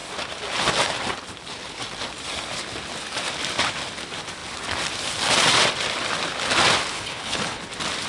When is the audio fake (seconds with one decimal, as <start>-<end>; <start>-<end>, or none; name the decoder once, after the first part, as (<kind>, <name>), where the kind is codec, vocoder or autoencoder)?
6.9-7.6 (codec, HILCodec)